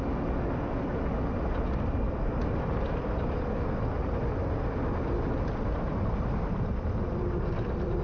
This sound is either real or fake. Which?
real